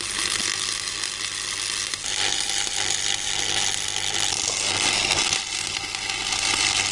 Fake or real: real